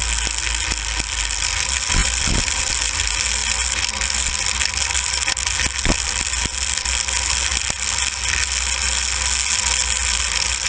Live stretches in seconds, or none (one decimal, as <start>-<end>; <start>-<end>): 0.0-2.0; 2.6-10.7